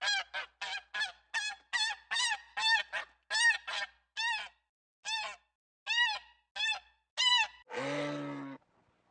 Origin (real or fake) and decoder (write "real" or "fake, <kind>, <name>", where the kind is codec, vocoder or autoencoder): real